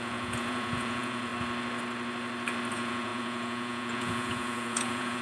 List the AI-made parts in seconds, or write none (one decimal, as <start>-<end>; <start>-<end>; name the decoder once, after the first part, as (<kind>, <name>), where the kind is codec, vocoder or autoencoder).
0.0-1.3 (vocoder, Vocos); 2.7-5.2